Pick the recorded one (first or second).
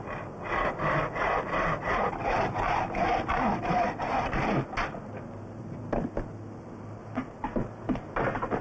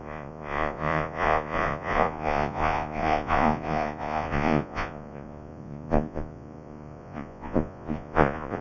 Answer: first